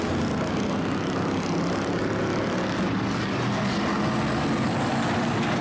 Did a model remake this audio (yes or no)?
no